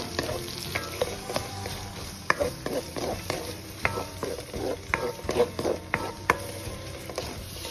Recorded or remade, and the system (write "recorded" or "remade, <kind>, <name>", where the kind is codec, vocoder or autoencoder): remade, vocoder, BigVGAN v2